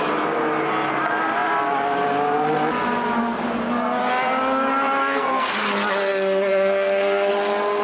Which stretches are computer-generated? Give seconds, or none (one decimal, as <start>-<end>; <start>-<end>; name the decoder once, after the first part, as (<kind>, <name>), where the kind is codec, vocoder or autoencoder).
5.0-5.5 (codec, SNAC); 6.0-7.3